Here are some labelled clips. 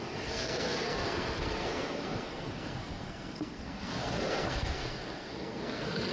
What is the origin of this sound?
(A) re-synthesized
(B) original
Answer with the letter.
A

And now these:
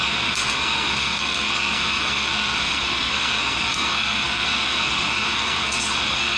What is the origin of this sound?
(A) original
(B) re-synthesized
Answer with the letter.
B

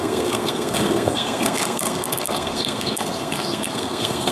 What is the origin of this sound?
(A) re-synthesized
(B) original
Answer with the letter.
A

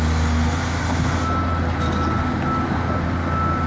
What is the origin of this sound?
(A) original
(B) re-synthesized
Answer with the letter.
A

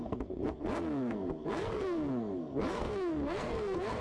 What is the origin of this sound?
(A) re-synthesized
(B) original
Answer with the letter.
A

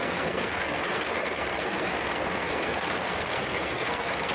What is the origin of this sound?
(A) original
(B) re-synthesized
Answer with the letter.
B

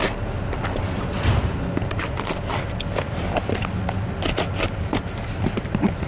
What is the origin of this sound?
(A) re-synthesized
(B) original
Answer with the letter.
B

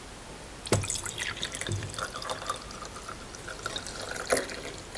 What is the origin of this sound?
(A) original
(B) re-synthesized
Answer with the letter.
A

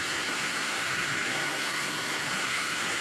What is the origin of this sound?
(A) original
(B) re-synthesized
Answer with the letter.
B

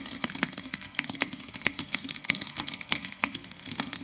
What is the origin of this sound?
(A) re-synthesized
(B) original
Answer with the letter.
A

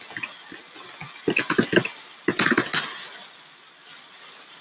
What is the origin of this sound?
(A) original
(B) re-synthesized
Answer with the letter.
A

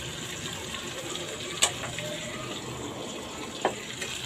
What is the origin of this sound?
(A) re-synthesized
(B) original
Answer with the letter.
B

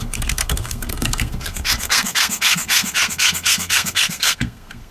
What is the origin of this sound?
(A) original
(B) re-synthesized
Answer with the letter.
B